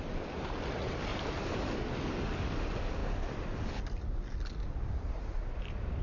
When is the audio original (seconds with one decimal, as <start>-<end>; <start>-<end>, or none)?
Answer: 0.0-6.0